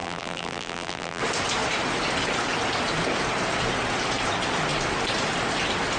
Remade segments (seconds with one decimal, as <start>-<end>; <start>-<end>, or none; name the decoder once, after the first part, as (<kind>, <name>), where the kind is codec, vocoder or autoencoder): 0.0-1.2 (vocoder, BigVGAN v2)